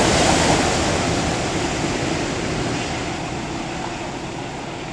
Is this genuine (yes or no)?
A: yes